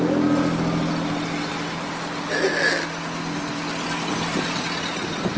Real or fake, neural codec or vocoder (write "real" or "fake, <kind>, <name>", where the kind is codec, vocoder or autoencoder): real